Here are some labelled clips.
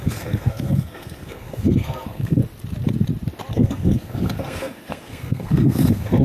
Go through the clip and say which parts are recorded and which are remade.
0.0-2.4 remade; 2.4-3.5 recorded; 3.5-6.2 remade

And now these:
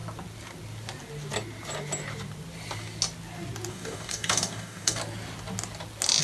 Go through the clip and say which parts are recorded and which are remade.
0.0-3.7 recorded; 3.7-5.0 remade; 5.0-6.2 recorded

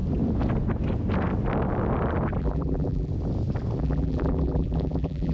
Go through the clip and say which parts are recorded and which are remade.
0.0-2.4 recorded; 2.4-3.1 remade; 3.1-3.8 recorded; 3.8-5.3 remade

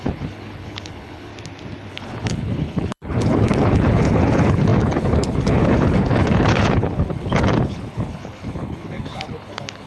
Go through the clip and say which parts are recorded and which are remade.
0.0-1.3 remade; 1.3-1.9 recorded; 1.9-9.9 remade

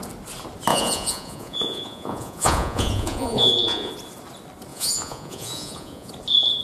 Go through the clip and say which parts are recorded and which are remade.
0.0-0.7 recorded; 0.7-3.9 remade; 3.9-4.7 recorded; 4.7-6.1 remade; 6.1-6.6 recorded

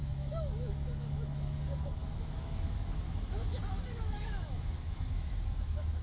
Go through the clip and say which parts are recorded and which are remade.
0.0-6.0 remade

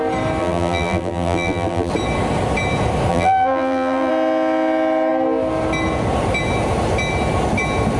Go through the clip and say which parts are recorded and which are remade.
0.0-0.4 recorded; 0.4-1.9 remade; 1.9-3.1 recorded; 3.1-4.1 remade; 4.1-8.0 recorded

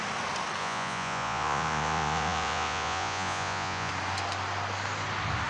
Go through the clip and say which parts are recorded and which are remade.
0.0-0.6 recorded; 0.6-3.9 remade; 3.9-5.5 recorded